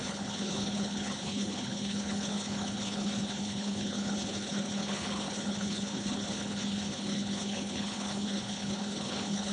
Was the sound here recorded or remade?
remade